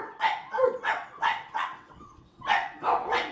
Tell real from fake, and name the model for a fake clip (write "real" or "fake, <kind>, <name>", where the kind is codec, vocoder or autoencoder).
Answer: fake, vocoder, WaveNeXt